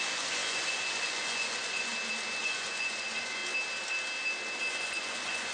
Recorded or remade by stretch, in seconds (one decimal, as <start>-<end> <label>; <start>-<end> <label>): 0.0-1.9 remade; 1.9-2.4 recorded; 2.4-3.4 remade; 3.4-4.7 recorded; 4.7-5.5 remade